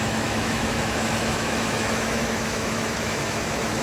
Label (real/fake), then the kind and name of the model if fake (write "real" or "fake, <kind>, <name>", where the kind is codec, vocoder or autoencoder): fake, autoencoder, DAC-VAE